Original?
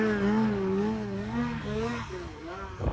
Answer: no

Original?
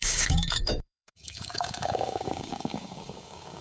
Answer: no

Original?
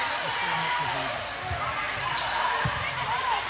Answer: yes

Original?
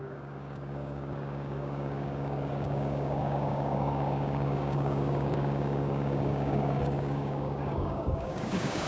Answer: no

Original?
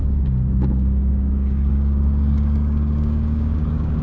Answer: no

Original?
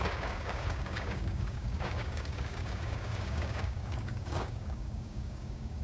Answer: no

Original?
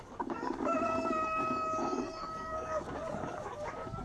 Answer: no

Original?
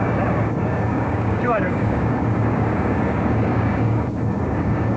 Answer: no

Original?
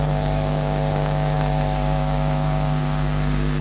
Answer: no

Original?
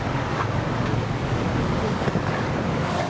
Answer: no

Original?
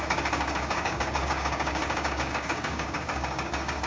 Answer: no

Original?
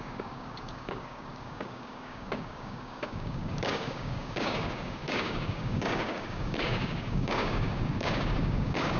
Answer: no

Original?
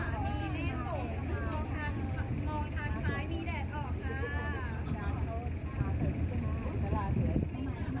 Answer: yes